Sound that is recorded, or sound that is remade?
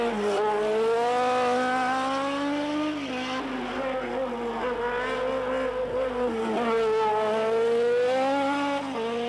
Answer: recorded